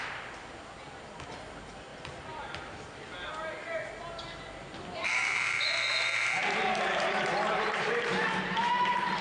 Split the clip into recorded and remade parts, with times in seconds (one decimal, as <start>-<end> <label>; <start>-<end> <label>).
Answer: 0.0-1.9 recorded; 1.9-3.3 remade; 3.3-5.2 recorded; 5.2-8.1 remade; 8.1-9.2 recorded